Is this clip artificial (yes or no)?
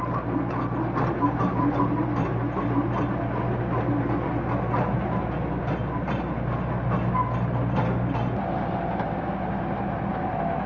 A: no